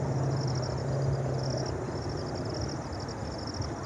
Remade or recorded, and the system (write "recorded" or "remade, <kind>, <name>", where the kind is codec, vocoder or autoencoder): recorded